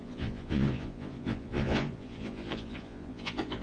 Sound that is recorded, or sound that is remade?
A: remade